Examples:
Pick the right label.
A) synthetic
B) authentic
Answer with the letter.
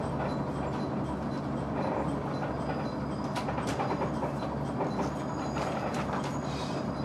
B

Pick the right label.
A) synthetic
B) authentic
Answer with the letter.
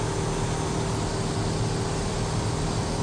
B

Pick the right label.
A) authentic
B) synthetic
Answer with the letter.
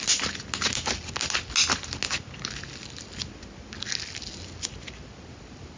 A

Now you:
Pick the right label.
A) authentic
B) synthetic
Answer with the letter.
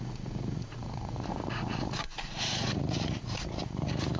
B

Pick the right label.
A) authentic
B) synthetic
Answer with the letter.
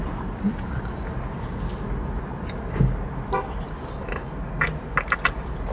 A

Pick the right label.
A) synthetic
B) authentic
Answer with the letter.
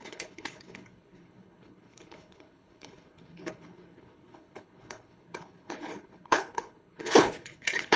A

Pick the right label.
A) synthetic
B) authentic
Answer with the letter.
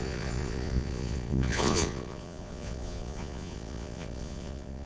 A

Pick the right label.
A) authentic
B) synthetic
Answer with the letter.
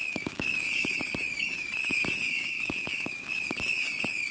B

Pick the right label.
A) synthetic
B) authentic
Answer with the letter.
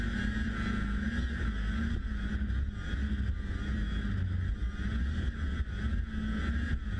B